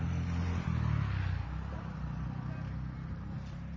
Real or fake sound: real